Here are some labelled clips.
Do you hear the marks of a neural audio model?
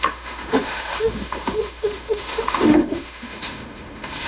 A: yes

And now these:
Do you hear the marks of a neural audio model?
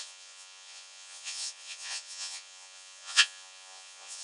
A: yes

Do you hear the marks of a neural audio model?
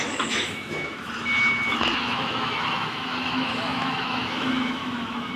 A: yes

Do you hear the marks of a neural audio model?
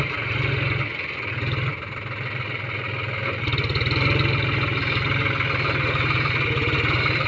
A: no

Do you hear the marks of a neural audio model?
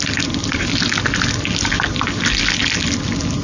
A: no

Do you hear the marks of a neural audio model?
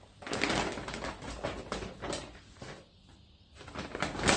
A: no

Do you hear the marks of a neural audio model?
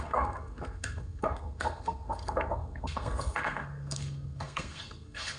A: yes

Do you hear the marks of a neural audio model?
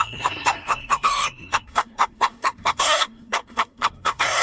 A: yes